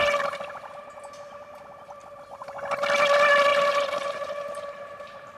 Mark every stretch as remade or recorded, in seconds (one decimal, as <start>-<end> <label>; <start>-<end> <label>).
0.0-3.5 recorded; 3.5-5.4 remade